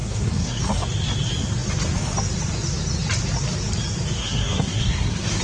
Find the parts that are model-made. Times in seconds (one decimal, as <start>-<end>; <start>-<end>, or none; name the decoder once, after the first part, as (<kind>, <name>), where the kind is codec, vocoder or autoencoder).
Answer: 0.0-0.6 (codec, SNAC); 4.2-5.4